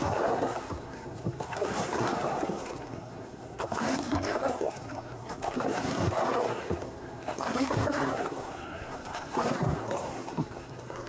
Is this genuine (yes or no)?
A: no